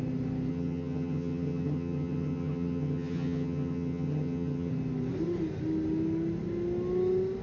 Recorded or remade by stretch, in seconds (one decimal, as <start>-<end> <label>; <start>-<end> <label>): 0.0-0.5 recorded; 0.5-4.7 remade; 4.7-7.4 recorded